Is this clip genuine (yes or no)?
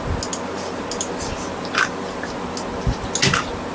yes